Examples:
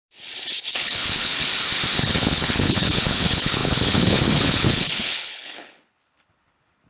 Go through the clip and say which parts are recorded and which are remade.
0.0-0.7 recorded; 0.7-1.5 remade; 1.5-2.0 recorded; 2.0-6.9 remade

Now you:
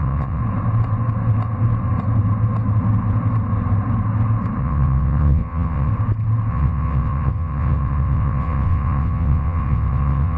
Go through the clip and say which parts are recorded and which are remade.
0.0-0.4 remade; 0.4-4.6 recorded; 4.6-5.9 remade; 5.9-6.5 recorded; 6.5-10.4 remade

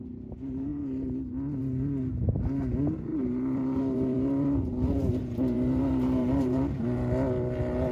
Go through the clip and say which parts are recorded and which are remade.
0.0-3.1 recorded; 3.1-6.8 remade; 6.8-7.9 recorded

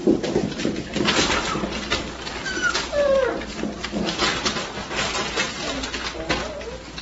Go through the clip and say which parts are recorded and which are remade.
0.0-4.3 recorded; 4.3-4.9 remade; 4.9-7.0 recorded